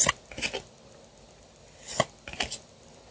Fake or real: real